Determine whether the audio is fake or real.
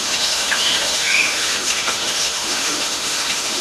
fake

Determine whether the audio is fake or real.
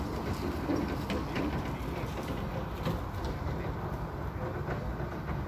real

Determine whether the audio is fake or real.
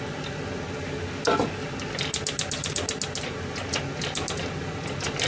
real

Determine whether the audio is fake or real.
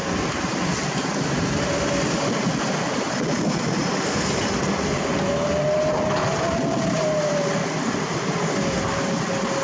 real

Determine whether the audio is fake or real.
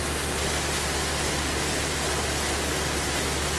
real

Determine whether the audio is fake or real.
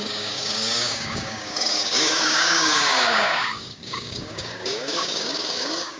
fake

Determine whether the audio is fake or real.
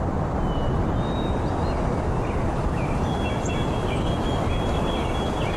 real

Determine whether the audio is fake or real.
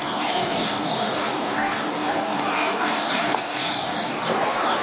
fake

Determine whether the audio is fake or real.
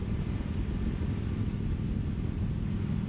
real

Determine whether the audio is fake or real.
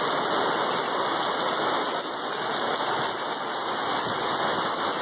real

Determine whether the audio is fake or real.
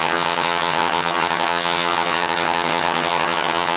fake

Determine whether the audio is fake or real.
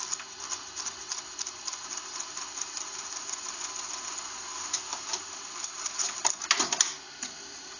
real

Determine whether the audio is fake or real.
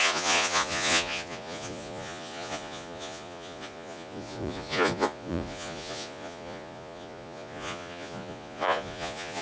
fake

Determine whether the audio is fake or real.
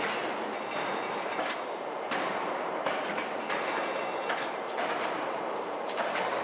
fake